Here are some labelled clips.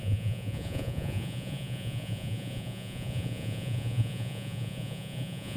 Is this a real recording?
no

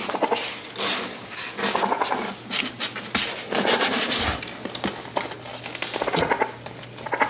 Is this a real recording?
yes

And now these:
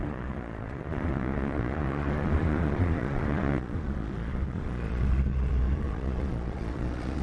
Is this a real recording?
no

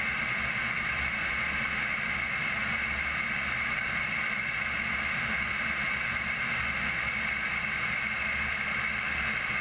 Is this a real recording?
yes